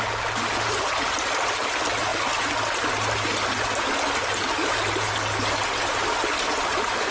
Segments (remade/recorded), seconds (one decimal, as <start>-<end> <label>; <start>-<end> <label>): 0.0-7.1 recorded